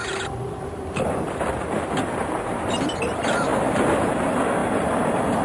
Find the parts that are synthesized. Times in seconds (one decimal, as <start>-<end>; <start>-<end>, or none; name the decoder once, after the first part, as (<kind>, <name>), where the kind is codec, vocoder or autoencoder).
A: 0.0-2.0 (vocoder, BigVGAN v2); 4.6-5.4